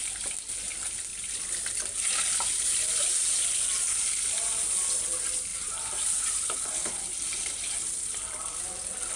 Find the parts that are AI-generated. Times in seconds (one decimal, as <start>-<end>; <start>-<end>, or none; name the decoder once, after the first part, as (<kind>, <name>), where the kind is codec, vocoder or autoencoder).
1.1-1.7 (vocoder, BigVGAN v2); 5.5-8.6